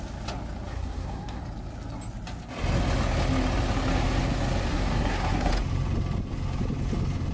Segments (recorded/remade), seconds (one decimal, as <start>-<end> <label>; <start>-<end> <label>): 0.0-0.7 recorded; 0.7-1.4 remade; 1.4-4.7 recorded; 4.7-5.5 remade; 5.5-7.3 recorded